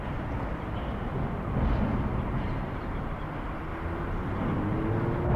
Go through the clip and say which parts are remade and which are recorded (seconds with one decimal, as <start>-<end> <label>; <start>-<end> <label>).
0.0-2.1 recorded; 2.1-2.8 remade; 2.8-5.4 recorded